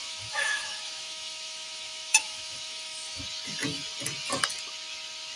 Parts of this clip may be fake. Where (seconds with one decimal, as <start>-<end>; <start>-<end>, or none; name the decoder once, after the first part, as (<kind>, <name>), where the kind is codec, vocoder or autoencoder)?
0.0-3.2 (autoencoder, DAC-VAE)